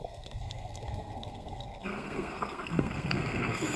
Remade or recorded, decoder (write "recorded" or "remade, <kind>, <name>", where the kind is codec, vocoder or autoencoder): remade, codec, SNAC